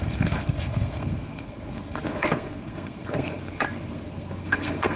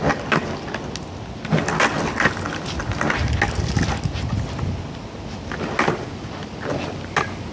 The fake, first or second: first